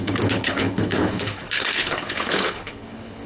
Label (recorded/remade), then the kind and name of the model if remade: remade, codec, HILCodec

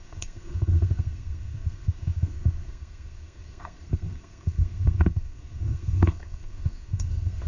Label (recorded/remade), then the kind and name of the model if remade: remade, codec, SNAC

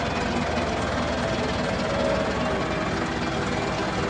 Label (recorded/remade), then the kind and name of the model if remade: recorded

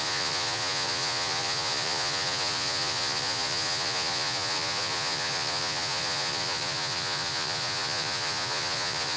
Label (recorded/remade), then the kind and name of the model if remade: remade, vocoder, Vocos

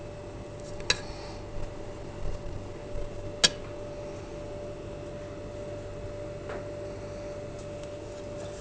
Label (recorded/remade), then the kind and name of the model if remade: recorded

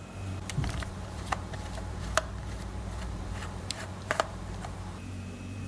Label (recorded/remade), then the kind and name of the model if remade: remade, vocoder, BigVGAN v2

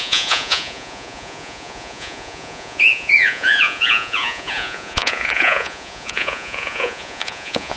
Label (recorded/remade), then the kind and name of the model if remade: remade, vocoder, Vocos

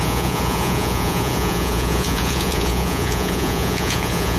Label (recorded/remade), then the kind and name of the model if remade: remade, vocoder, Vocos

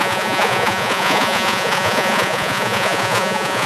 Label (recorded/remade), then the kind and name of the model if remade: remade, vocoder, Vocos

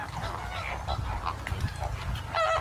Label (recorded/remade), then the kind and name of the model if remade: recorded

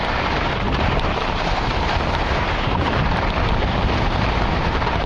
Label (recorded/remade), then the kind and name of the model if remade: remade, vocoder, BigVGAN v2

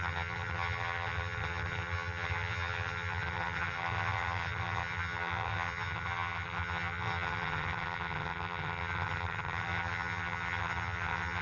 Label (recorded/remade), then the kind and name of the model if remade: remade, vocoder, HiFi-GAN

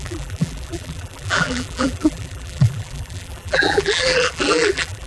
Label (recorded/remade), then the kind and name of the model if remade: remade, vocoder, BigVGAN v2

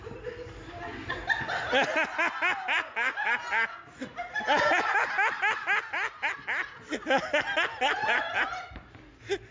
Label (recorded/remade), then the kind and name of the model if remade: recorded